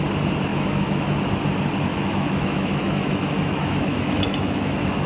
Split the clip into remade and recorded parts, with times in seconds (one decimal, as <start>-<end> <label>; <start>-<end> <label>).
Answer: 0.0-0.5 recorded; 0.5-1.3 remade; 1.3-1.9 recorded; 1.9-5.1 remade